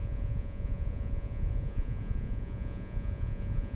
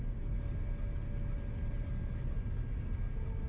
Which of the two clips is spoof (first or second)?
first